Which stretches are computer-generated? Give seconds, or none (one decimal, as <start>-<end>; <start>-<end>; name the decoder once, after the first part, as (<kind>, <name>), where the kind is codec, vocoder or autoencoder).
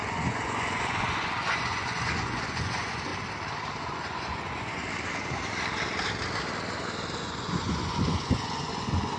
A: 0.0-3.1 (vocoder, Vocos); 3.8-4.8; 7.2-9.2